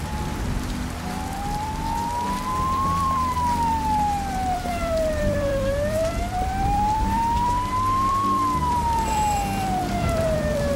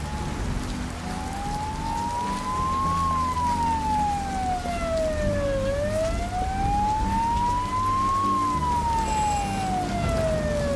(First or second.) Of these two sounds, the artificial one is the first